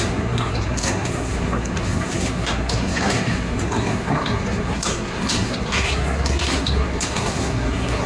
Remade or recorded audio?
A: remade